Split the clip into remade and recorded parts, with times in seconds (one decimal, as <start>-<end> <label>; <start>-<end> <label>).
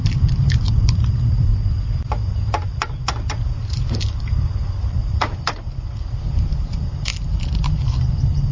0.0-1.5 remade; 1.5-3.3 recorded; 3.3-7.1 remade; 7.1-8.5 recorded